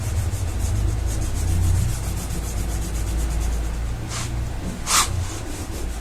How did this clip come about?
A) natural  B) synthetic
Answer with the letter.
A